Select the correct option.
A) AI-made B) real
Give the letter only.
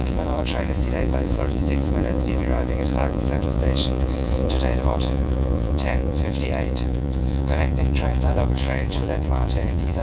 A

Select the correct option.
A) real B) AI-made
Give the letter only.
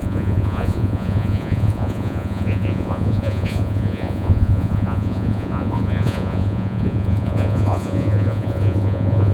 B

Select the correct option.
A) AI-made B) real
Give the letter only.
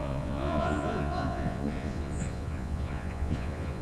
A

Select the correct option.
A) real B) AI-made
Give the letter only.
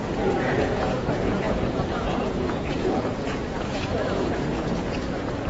B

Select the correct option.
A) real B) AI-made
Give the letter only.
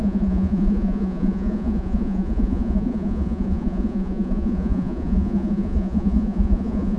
B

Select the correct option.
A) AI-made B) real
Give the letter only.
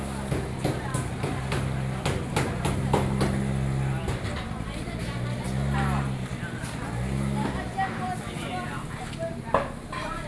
B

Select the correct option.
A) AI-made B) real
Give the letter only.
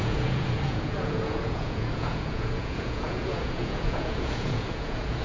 A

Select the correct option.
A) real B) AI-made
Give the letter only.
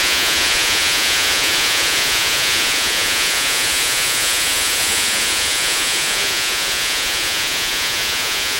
B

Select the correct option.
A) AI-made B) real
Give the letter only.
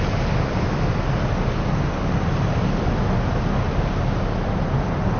B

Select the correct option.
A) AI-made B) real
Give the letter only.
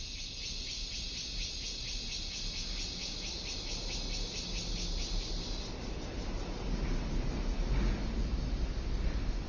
B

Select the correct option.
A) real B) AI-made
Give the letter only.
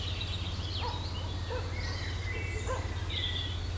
A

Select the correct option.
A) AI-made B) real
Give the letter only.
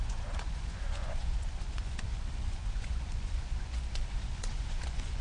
A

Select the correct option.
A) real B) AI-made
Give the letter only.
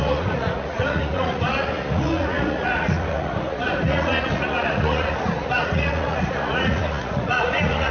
B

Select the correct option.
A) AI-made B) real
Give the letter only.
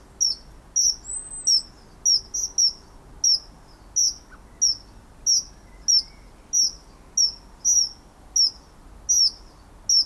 B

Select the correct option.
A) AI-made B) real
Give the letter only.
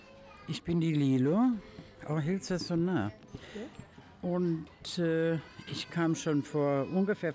B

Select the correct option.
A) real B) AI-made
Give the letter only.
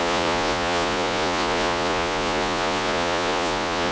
B